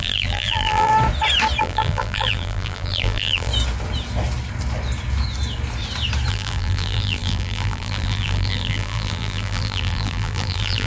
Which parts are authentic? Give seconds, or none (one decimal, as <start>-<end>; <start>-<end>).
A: 0.9-1.6; 3.5-6.3